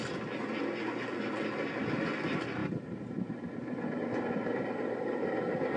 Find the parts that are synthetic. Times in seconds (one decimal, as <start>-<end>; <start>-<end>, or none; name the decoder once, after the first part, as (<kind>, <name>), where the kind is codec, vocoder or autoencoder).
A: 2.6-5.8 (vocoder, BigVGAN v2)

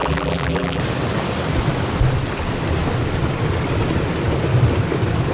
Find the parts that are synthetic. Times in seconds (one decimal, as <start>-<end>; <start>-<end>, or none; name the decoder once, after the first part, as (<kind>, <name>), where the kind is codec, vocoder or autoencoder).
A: 0.0-0.8 (vocoder, BigVGAN v2)

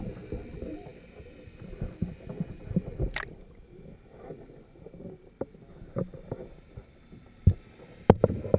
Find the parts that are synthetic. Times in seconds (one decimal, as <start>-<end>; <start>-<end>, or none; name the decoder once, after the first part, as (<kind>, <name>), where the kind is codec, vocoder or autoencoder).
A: 2.9-7.4 (vocoder, BigVGAN v2)

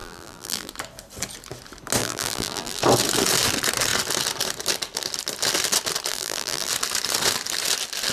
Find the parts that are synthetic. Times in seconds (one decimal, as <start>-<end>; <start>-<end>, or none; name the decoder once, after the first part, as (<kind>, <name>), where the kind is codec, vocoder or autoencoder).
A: 0.0-0.7 (vocoder, BigVGAN v2); 2.0-2.8; 6.1-6.7

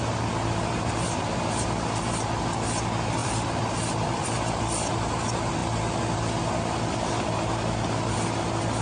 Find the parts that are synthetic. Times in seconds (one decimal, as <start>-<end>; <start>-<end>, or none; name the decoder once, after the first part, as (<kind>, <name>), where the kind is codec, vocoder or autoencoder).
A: 3.2-4.6 (vocoder, BigVGAN v2)

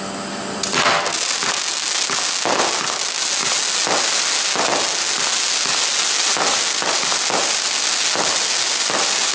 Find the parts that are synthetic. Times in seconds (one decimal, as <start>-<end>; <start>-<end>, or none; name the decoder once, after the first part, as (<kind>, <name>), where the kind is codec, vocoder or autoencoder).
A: none

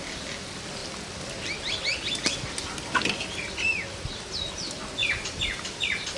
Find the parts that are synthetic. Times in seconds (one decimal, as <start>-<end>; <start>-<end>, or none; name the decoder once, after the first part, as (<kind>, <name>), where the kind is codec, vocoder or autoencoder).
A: 5.0-6.2 (vocoder, BigVGAN v2)